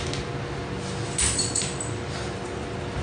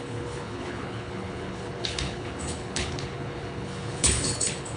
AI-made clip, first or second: second